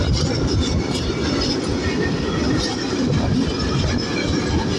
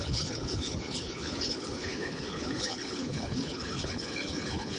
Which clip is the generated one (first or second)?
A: second